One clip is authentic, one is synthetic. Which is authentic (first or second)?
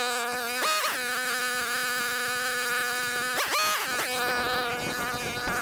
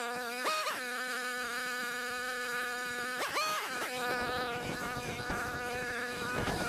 first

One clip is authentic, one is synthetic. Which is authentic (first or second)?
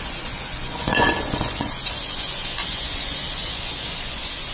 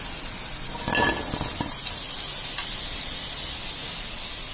second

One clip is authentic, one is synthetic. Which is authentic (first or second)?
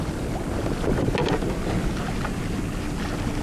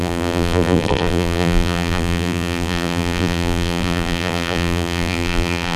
first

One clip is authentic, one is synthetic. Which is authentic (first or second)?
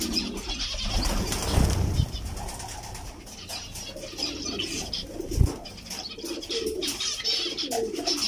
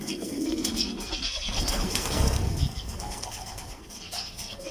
first